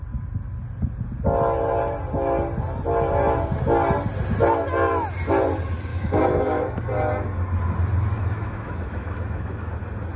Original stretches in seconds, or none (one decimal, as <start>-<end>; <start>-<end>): 0.0-5.9; 6.8-8.1; 9.7-10.2